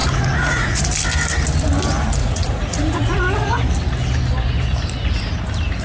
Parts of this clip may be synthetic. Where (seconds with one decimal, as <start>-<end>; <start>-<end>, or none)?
0.0-0.8; 2.2-3.2

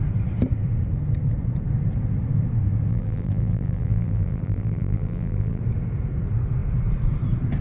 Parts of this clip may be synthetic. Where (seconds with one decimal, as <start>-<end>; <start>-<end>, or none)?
2.9-5.6

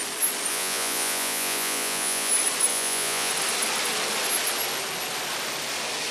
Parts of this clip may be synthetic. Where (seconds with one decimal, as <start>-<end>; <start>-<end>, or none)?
0.5-2.3; 2.7-3.3

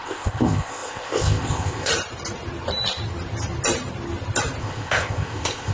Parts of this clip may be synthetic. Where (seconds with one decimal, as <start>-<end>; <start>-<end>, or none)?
0.0-1.9; 4.6-5.7

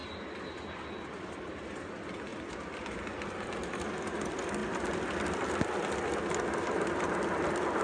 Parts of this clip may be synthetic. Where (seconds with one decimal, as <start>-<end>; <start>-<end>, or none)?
none